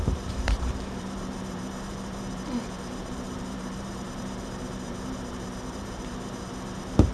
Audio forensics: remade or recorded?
remade